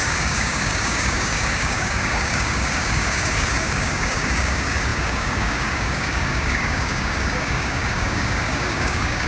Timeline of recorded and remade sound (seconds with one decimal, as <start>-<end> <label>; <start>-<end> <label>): 0.0-9.3 remade